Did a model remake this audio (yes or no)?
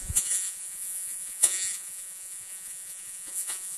yes